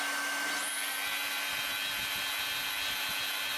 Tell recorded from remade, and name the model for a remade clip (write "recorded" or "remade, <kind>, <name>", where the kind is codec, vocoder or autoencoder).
recorded